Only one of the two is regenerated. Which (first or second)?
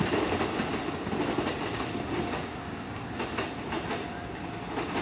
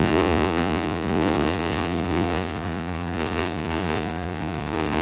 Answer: second